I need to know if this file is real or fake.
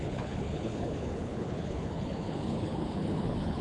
fake